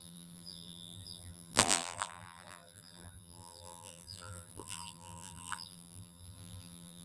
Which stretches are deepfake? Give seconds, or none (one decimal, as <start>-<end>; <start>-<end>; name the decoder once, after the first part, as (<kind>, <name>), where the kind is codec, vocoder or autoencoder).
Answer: 0.0-7.0 (vocoder, BigVGAN v2)